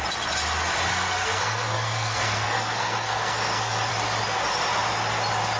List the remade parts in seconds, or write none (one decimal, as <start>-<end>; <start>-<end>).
0.9-3.9